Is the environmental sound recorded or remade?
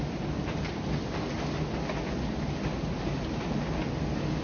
recorded